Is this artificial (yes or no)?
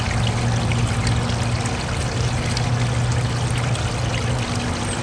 no